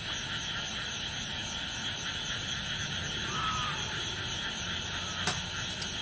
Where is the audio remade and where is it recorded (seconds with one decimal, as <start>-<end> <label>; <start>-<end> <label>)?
0.0-6.0 recorded